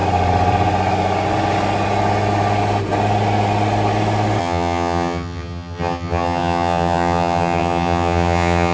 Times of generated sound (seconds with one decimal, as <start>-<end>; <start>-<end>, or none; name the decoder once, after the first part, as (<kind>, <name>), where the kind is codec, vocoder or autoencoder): 4.4-8.7 (vocoder, HiFi-GAN)